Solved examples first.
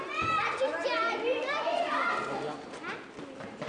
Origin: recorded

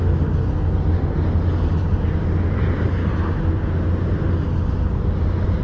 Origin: recorded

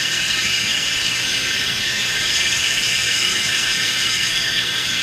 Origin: remade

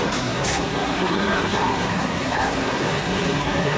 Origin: remade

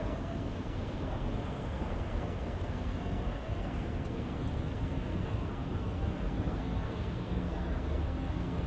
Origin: remade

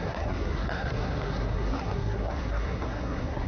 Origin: remade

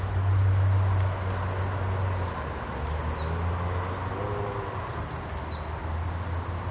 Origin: recorded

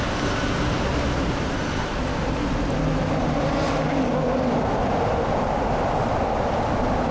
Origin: recorded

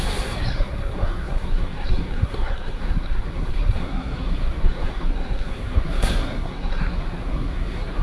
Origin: remade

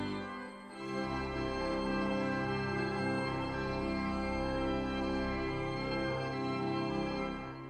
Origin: remade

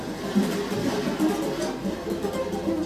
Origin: recorded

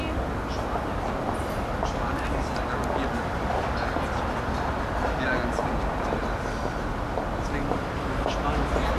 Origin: recorded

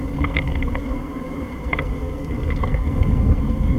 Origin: remade